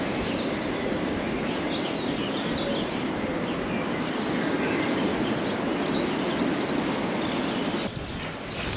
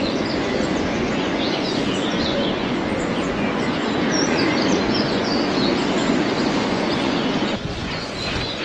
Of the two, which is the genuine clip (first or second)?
first